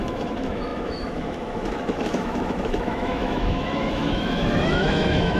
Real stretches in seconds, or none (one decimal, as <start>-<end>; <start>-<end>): none